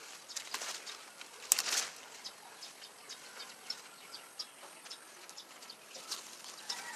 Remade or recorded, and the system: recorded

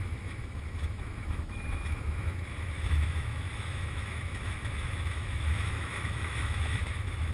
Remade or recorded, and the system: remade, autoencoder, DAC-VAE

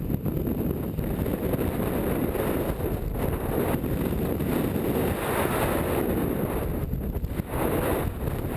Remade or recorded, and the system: recorded